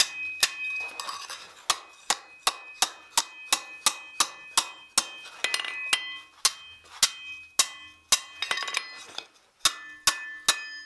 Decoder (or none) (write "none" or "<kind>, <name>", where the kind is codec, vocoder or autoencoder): none